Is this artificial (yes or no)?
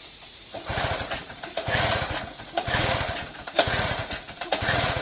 yes